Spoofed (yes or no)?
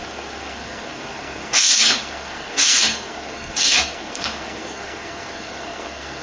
yes